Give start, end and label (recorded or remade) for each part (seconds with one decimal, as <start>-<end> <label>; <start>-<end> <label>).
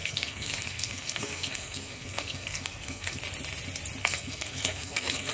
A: 0.0-3.2 remade; 3.2-4.0 recorded; 4.0-5.3 remade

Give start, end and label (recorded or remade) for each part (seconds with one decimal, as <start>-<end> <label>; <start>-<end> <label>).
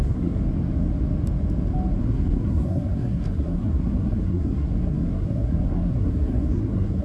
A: 0.0-0.4 remade; 0.4-2.0 recorded; 2.0-7.0 remade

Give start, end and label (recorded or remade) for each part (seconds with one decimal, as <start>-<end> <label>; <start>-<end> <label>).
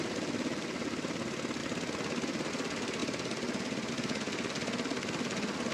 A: 0.0-5.7 recorded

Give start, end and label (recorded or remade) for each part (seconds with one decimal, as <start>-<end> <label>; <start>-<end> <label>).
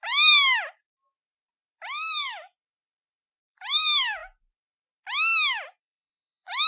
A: 0.0-1.0 remade; 1.0-3.4 recorded; 3.4-4.2 remade; 4.2-5.8 recorded; 5.8-6.7 remade